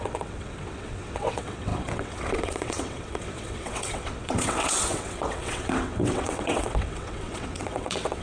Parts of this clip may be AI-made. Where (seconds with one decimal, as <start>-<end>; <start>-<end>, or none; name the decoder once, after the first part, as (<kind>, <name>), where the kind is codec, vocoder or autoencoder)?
0.0-8.2 (vocoder, WaveNeXt)